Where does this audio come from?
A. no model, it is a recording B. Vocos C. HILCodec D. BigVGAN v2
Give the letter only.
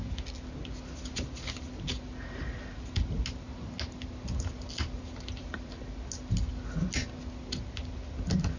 A